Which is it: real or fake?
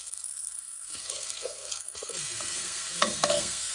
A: fake